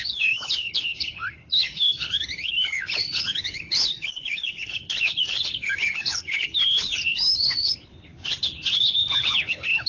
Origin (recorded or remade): remade